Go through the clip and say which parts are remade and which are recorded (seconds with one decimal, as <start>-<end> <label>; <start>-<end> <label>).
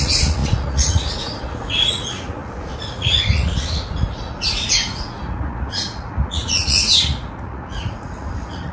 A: 0.0-8.7 remade